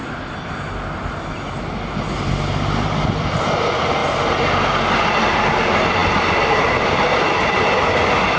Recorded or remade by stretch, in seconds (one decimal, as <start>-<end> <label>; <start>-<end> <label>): 0.0-8.4 recorded